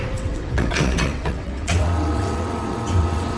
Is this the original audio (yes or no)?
no